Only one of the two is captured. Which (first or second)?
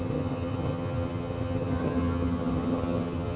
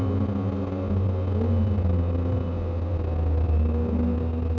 second